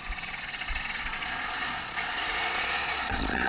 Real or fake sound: fake